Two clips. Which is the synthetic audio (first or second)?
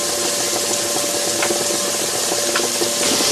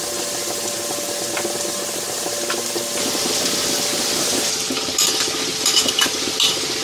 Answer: second